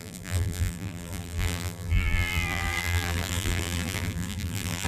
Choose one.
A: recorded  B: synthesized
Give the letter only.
B